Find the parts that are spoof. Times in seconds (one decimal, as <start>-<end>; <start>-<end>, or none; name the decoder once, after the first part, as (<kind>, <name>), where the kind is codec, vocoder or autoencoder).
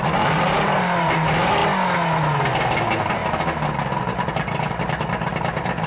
0.0-1.6 (vocoder, BigVGAN v2); 2.4-3.2; 4.0-5.9